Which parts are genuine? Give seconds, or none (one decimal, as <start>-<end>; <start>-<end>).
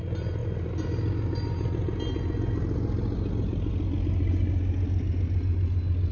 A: 0.0-6.1